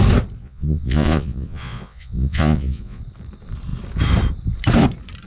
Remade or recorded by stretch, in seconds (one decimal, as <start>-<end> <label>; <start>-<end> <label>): 0.0-0.4 recorded; 0.4-3.0 remade; 3.0-5.3 recorded